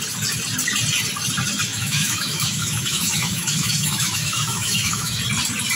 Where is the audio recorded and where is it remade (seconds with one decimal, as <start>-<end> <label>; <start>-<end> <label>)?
0.0-1.7 recorded; 1.7-5.2 remade; 5.2-5.8 recorded